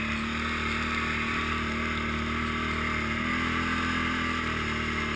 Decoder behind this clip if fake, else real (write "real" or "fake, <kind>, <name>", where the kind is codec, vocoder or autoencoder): real